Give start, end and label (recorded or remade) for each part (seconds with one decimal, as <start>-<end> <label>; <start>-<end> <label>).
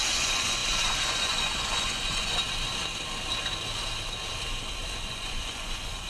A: 0.0-2.4 remade; 2.4-5.1 recorded; 5.1-6.1 remade